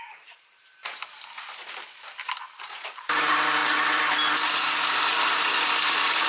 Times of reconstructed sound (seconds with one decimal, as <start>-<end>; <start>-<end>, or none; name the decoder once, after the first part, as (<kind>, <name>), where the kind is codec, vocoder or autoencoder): 0.0-0.8 (vocoder, BigVGAN v2); 2.6-3.6; 5.7-6.3